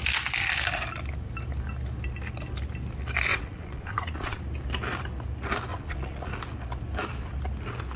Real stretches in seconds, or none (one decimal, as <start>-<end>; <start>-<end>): 0.0-3.3; 4.4-5.7; 6.3-8.0